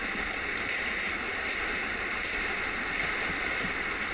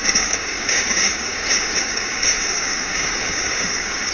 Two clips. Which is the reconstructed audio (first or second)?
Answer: second